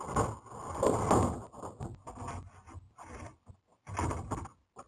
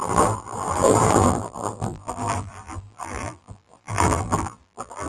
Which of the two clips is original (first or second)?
first